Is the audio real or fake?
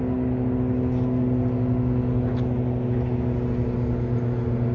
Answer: real